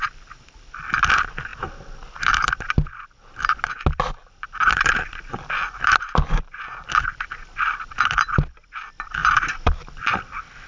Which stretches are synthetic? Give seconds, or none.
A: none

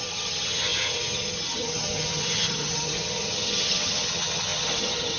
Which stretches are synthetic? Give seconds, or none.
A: 0.0-5.2

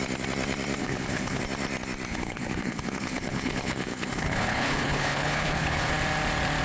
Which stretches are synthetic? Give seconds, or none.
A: 0.8-1.4; 2.1-5.9

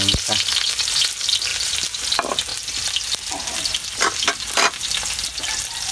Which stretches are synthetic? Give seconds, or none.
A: none

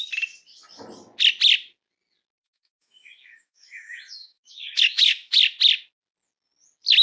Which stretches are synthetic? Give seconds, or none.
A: 2.4-5.4

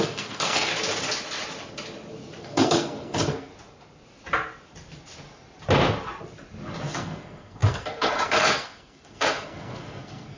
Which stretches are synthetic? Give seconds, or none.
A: 0.0-0.7; 2.4-3.5; 6.9-10.4